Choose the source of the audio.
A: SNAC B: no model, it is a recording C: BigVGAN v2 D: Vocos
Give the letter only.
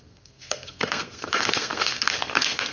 A